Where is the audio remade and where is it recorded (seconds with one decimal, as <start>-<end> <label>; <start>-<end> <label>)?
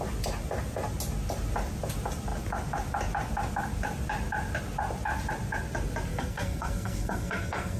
0.0-6.1 recorded; 6.1-7.8 remade